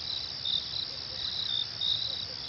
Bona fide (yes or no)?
yes